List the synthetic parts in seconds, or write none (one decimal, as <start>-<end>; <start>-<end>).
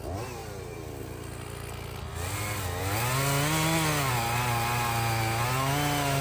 none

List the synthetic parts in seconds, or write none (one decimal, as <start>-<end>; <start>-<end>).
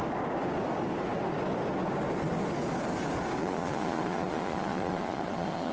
3.4-5.7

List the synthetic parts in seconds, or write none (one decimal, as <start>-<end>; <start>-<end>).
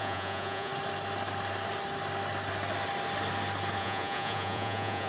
0.0-0.7; 3.8-5.1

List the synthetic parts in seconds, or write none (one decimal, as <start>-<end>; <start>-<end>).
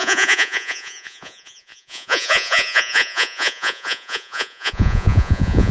0.0-5.7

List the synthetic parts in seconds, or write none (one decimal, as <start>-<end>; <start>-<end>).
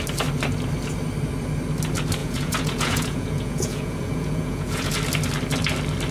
2.2-5.0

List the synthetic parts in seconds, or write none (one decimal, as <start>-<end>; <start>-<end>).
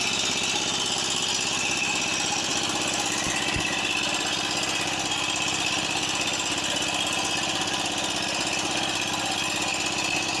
none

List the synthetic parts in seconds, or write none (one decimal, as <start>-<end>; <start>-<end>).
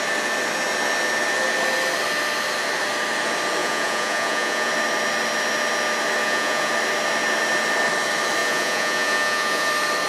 3.6-4.7; 6.2-6.7; 8.4-9.7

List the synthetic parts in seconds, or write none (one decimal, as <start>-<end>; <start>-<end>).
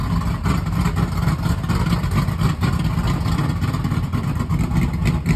none